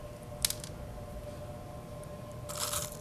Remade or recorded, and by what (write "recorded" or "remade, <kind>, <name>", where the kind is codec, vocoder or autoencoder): recorded